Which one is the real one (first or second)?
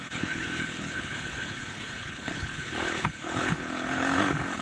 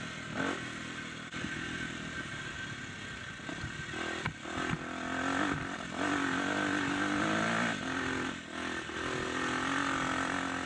second